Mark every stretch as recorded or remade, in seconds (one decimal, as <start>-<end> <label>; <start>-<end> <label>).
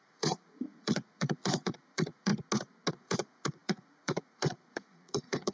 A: 0.0-2.3 remade; 2.3-2.9 recorded; 2.9-5.5 remade